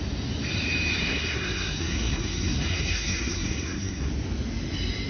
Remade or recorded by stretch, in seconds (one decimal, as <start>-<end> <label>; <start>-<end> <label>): 0.0-1.0 recorded; 1.0-4.1 remade; 4.1-5.1 recorded